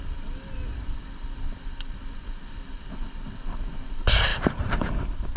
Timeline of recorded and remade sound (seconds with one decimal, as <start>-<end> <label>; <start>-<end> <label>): 0.0-4.3 recorded; 4.3-4.9 remade; 4.9-5.4 recorded